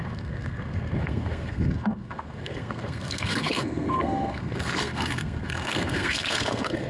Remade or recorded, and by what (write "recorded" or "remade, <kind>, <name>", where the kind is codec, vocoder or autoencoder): remade, codec, SNAC